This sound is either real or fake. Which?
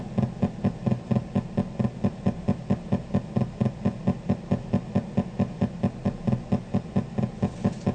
real